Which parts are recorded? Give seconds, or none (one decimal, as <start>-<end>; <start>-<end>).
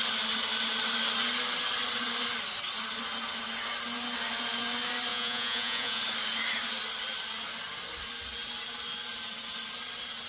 0.0-5.1; 6.0-10.3